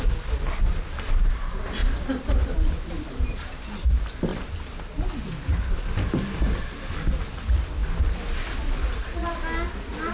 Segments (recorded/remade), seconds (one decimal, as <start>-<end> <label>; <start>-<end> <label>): 0.0-1.8 recorded; 1.8-3.5 remade; 3.5-4.3 recorded; 4.3-4.8 remade; 4.8-10.1 recorded